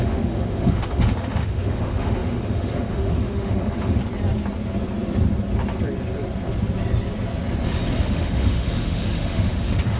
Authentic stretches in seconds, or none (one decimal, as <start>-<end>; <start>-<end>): 4.0-8.0